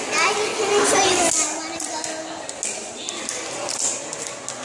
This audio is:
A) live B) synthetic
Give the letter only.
A